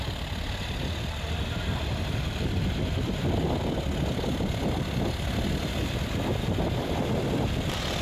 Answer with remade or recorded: recorded